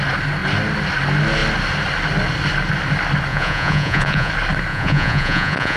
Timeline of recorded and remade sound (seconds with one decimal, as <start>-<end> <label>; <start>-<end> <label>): 0.0-3.3 recorded; 3.3-4.3 remade; 4.3-4.7 recorded; 4.7-5.8 remade